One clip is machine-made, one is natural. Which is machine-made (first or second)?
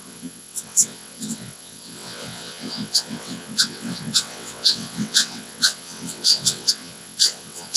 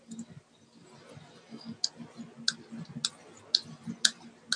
first